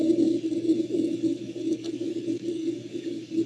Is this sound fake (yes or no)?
yes